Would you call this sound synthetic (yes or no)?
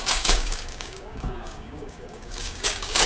yes